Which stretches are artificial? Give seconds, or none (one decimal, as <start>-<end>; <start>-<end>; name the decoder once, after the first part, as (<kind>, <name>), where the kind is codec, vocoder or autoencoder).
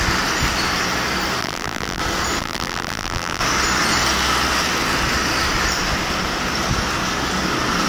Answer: 1.4-2.0 (vocoder, BigVGAN v2); 2.4-3.4